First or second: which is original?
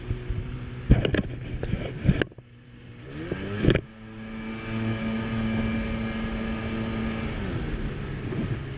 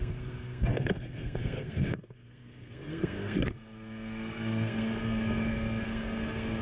first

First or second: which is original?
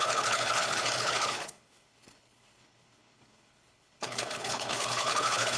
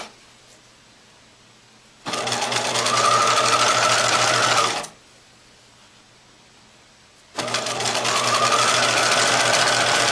second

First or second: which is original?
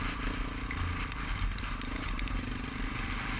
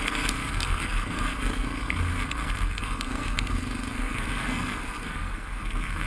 first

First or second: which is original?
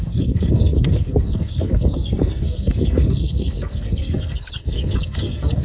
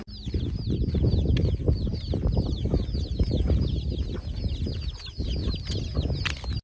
second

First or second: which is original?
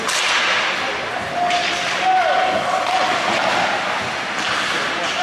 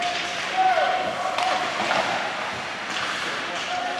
first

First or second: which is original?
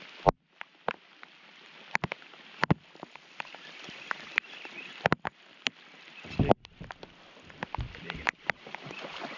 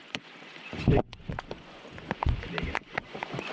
first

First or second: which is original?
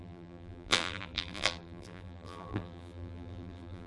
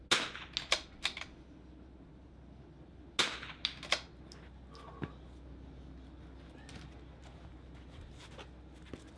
second